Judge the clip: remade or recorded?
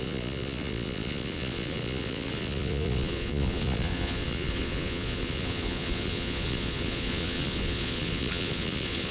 remade